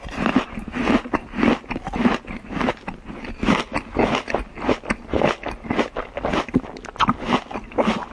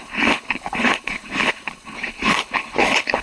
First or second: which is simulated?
second